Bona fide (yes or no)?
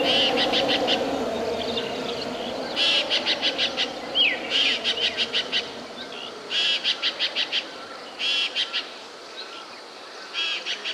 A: yes